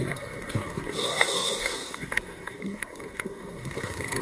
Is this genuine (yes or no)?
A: no